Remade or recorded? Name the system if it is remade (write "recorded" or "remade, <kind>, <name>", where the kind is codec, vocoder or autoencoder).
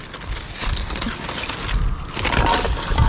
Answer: recorded